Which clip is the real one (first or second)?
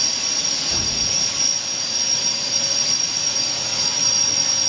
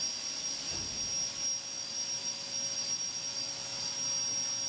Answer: second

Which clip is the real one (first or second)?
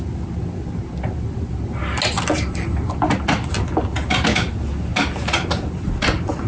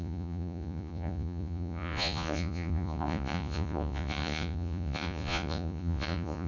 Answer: first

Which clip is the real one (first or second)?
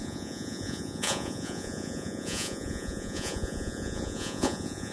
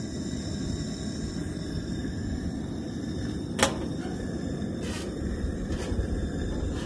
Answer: second